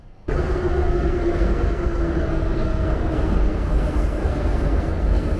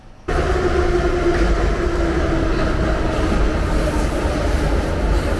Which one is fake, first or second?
first